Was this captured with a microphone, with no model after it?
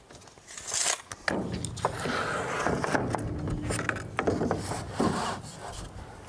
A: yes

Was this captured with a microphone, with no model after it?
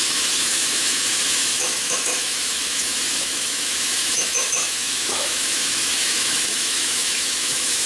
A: no